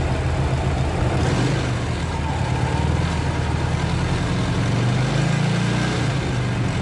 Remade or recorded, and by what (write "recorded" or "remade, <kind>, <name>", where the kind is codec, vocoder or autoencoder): recorded